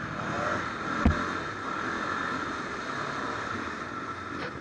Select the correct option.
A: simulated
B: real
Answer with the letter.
B